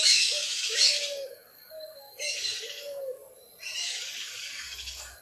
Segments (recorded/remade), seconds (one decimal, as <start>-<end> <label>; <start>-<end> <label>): 0.0-3.2 remade; 3.2-3.8 recorded; 3.8-5.2 remade

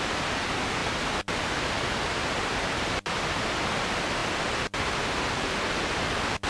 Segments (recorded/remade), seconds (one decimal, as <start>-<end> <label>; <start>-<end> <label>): 0.0-6.5 recorded

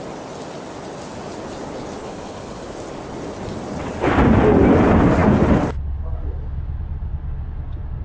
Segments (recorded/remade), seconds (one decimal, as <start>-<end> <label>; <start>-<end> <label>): 0.0-2.0 recorded; 2.0-2.6 remade; 2.6-8.0 recorded

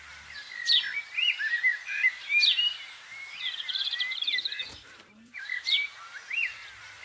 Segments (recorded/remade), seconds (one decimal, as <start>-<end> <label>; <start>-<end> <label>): 0.0-1.7 recorded; 1.7-5.9 remade; 5.9-7.0 recorded

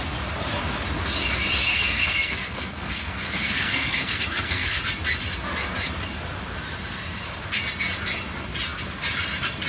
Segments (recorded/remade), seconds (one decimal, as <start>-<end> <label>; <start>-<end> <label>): 0.0-1.7 recorded; 1.7-4.8 remade; 4.8-9.7 recorded

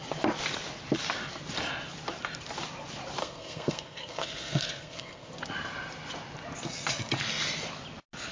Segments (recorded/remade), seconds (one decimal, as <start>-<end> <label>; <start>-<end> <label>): 0.0-3.2 recorded; 3.2-5.3 remade; 5.3-8.3 recorded

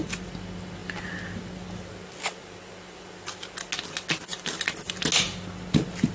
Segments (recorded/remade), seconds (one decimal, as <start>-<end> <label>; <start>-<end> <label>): 0.0-6.1 recorded

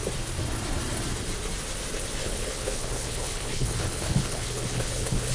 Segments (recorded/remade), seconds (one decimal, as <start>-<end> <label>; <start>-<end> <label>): 0.0-2.2 recorded; 2.2-5.3 remade